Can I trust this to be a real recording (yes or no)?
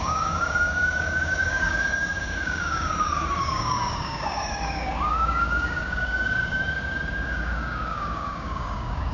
no